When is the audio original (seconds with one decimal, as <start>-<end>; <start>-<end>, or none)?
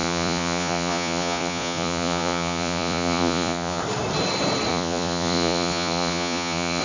3.8-4.7